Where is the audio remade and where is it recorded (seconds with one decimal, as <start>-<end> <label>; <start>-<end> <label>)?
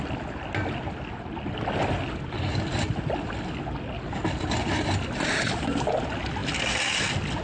0.0-7.4 recorded